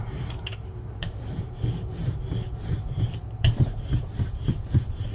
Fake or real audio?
fake